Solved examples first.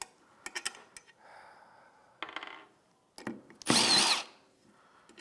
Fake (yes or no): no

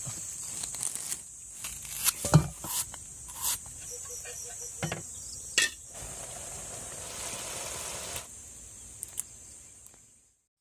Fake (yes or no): no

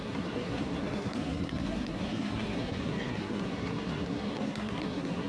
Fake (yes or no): yes